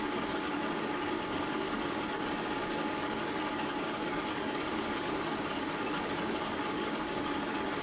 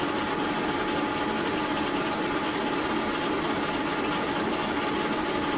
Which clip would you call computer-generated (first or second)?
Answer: first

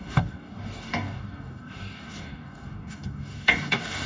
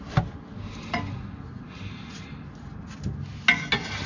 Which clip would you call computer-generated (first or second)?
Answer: first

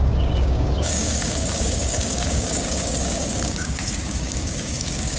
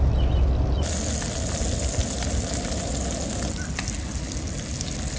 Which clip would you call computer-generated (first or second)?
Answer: first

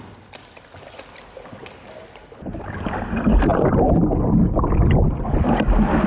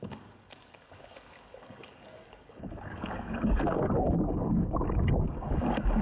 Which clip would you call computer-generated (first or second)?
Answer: second